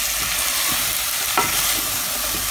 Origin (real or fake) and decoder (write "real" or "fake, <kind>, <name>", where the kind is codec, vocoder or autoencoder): real